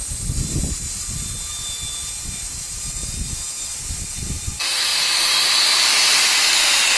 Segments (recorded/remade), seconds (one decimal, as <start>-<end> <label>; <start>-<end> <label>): 0.0-7.0 recorded